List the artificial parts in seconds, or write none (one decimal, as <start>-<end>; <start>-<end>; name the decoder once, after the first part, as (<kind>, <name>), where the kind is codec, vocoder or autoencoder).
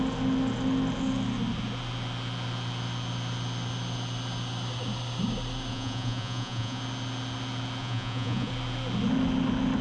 5.7-6.8 (vocoder, Vocos); 7.8-8.5